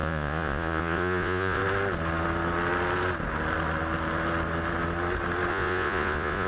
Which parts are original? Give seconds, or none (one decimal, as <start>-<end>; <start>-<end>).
1.6-5.5